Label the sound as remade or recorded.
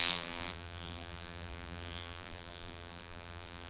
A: remade